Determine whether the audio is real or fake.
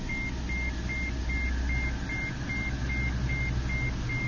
real